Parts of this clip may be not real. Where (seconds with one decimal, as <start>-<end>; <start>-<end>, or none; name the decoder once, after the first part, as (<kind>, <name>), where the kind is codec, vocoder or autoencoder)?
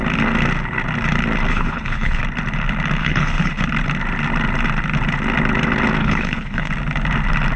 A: 1.5-2.2 (codec, HILCodec); 3.0-3.6; 6.0-6.7